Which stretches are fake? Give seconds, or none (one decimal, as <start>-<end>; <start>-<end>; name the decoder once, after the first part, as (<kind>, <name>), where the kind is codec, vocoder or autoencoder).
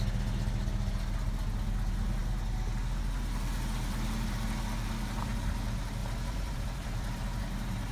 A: 6.0-7.4 (vocoder, BigVGAN v2)